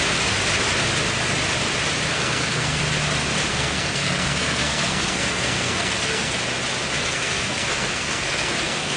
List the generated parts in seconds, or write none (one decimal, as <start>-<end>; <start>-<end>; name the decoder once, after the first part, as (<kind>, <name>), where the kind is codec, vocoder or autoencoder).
2.1-2.8 (codec, SNAC); 3.5-6.4; 7.0-9.0